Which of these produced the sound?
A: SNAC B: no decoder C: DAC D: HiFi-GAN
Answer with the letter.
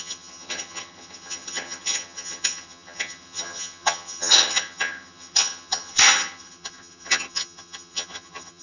D